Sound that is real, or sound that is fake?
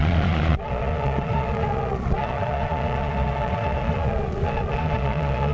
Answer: fake